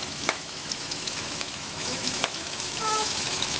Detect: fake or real fake